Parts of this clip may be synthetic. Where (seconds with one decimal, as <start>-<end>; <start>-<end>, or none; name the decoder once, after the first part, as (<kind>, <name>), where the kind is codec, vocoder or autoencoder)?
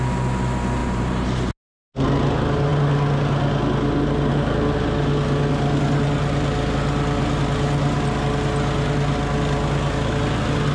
0.8-1.5 (vocoder, BigVGAN v2)